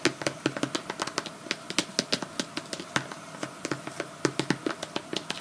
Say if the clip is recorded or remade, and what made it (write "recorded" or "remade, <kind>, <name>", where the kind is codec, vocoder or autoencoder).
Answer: recorded